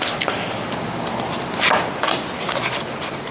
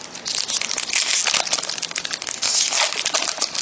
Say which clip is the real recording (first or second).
second